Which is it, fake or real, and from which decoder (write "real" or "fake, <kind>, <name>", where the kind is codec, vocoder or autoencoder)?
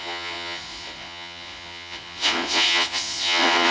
fake, vocoder, Vocos